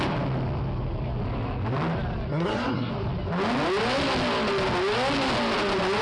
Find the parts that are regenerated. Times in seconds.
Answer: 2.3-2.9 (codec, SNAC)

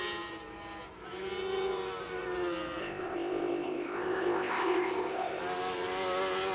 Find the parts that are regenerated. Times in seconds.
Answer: 2.8-5.4 (codec, ZipCodec)

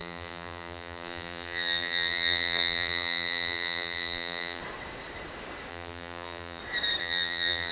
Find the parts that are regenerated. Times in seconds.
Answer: 0.0-4.6 (vocoder, BigVGAN v2); 5.7-6.6; 7.0-7.7